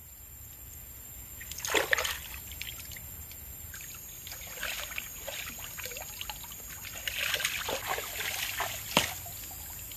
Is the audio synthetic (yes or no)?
no